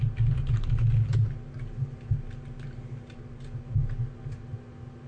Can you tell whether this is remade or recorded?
recorded